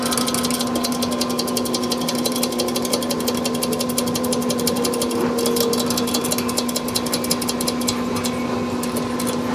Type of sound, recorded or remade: recorded